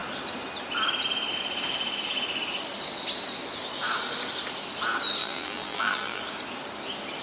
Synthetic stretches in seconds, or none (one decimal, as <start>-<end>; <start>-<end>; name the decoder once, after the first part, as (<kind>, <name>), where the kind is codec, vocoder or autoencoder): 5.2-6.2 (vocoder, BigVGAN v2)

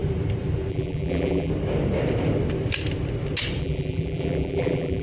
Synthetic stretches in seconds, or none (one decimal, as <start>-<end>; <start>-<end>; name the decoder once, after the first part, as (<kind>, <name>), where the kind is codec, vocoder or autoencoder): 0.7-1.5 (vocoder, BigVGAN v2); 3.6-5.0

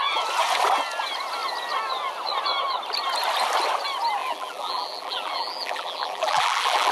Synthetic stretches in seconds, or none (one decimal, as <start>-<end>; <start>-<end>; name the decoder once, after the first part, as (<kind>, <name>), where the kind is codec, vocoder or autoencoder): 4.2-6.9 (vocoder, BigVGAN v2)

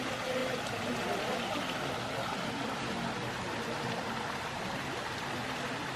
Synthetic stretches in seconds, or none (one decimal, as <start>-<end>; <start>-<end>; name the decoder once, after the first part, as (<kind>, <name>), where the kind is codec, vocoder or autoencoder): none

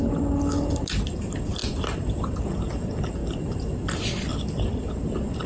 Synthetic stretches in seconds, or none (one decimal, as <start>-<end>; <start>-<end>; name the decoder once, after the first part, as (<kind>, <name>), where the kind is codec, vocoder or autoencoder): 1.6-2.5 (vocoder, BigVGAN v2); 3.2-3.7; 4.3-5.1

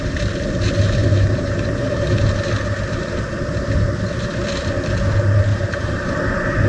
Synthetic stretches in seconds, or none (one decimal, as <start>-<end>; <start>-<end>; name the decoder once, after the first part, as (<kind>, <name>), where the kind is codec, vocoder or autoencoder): 1.0-2.5 (vocoder, BigVGAN v2); 5.5-6.1

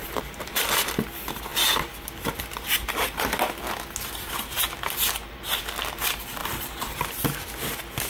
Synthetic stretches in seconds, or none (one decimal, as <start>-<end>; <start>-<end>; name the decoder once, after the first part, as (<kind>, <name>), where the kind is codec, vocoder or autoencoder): 0.0-0.6 (vocoder, BigVGAN v2); 6.4-7.0

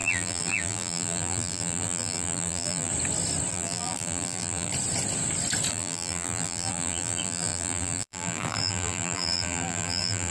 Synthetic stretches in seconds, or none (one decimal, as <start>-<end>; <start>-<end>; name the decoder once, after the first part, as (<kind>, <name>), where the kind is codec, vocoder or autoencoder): 0.0-2.9 (vocoder, BigVGAN v2); 3.5-4.7; 5.7-10.3